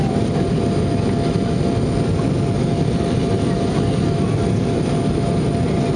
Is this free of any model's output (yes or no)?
yes